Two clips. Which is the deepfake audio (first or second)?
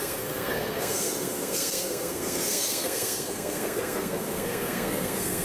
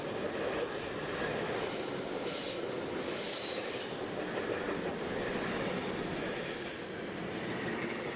first